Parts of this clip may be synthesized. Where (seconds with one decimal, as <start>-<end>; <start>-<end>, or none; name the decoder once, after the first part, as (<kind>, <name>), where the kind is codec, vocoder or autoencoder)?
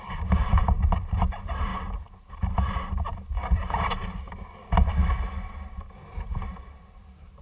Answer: 0.0-1.7 (vocoder, BigVGAN v2); 2.3-4.0; 5.7-7.4